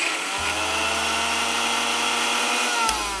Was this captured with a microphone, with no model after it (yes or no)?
yes